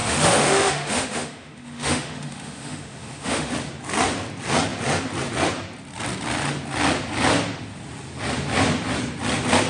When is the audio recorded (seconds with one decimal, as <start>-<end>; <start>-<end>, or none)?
3.5-9.7